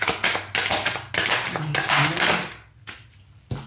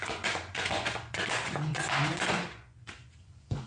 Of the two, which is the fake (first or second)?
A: second